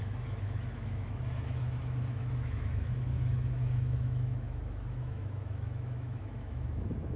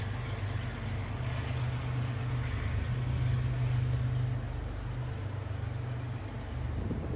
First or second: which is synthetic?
first